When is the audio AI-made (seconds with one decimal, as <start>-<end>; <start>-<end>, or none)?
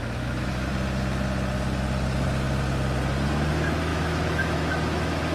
0.0-0.7; 3.5-5.3